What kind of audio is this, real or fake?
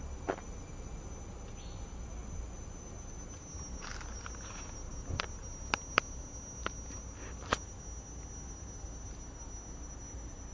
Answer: real